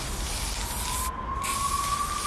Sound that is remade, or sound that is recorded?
recorded